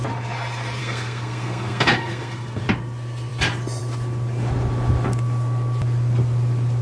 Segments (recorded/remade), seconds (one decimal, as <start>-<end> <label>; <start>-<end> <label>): 0.0-0.8 recorded; 0.8-2.6 remade; 2.6-6.8 recorded